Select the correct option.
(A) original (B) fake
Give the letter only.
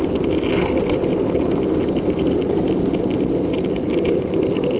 A